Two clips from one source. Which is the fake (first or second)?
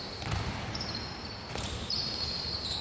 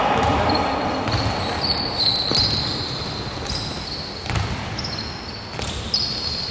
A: first